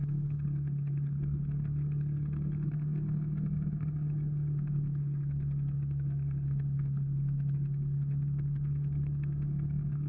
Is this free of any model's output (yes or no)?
no